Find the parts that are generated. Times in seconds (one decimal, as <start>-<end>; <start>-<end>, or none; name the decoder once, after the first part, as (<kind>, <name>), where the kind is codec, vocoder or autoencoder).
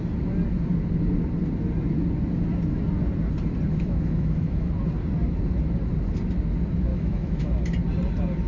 3.7-4.7 (autoencoder, DAC-VAE); 6.9-7.5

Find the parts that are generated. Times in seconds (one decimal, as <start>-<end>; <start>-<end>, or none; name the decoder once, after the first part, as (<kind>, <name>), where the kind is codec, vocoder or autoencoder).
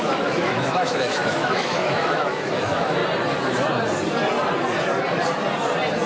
0.0-3.0 (autoencoder, DAC-VAE)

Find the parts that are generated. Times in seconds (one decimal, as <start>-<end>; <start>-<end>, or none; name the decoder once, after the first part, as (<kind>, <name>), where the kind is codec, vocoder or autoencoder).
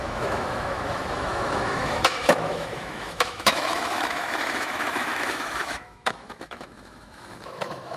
0.0-8.0 (autoencoder, DAC-VAE)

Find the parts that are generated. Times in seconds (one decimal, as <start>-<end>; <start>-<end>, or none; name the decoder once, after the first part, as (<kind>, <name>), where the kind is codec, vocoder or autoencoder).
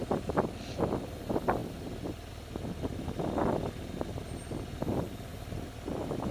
none